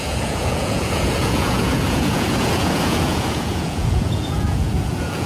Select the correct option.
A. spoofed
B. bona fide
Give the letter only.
A